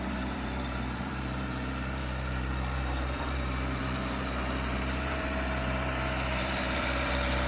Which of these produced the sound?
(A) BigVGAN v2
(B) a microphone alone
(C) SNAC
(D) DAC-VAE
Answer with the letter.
A